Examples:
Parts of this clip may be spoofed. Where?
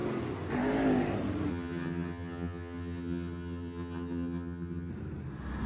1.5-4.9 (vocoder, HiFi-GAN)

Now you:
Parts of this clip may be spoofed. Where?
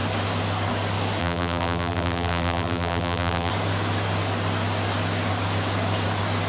1.2-3.5 (vocoder, BigVGAN v2)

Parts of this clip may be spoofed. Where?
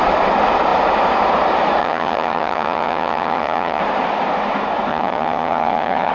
1.8-3.8 (vocoder, HiFi-GAN); 4.9-6.1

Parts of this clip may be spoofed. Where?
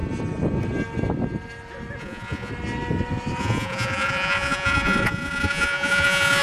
2.0-2.5 (vocoder, Vocos); 3.4-6.4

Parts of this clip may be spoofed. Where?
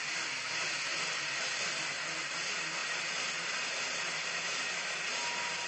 0.9-1.6 (vocoder, BigVGAN v2); 2.8-4.2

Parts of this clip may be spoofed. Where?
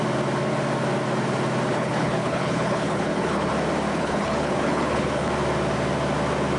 1.7-3.5 (codec, HILCodec); 3.9-5.3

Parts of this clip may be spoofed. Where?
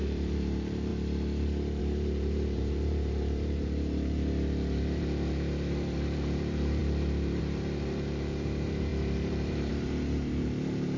0.0-0.9 (vocoder, BigVGAN v2); 1.8-11.0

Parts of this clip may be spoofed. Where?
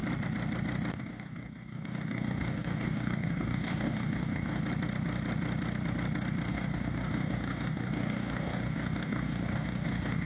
0.9-4.6 (codec, DAC); 6.5-10.3